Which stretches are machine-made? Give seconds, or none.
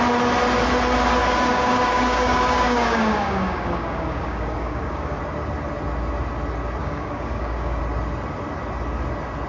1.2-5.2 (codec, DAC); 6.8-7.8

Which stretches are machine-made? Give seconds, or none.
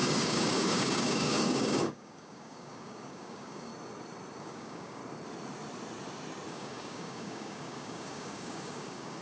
0.0-3.7 (codec, DAC); 4.4-5.0; 6.5-9.2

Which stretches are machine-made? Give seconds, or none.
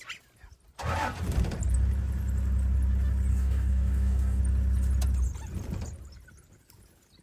3.3-4.4 (codec, DAC)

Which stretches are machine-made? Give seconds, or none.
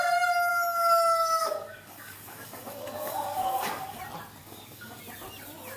0.5-4.0 (codec, DAC); 4.4-5.0